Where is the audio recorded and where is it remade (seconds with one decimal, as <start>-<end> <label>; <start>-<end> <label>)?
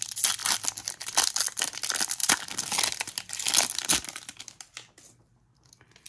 0.0-6.1 recorded